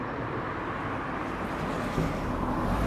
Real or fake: real